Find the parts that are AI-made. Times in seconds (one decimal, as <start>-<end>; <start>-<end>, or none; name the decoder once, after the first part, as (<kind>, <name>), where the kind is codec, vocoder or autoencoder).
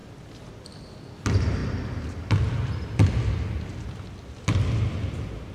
0.0-0.5 (vocoder, BigVGAN v2); 1.6-3.1